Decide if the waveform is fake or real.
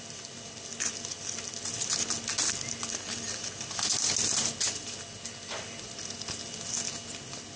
real